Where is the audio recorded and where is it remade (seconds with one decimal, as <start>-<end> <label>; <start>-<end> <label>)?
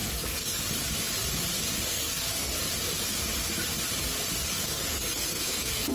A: 0.0-0.6 remade; 0.6-1.9 recorded; 1.9-2.5 remade; 2.5-4.5 recorded; 4.5-5.9 remade